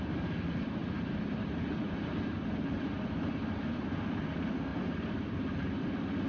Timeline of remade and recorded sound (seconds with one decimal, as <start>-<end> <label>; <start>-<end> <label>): 0.0-0.8 recorded; 0.8-4.0 remade; 4.0-4.7 recorded; 4.7-5.8 remade; 5.8-6.3 recorded